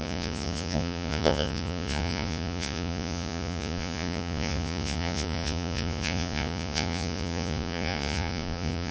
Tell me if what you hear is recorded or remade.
remade